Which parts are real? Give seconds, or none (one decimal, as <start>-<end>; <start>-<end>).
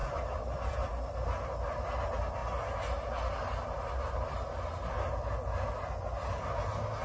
0.7-7.0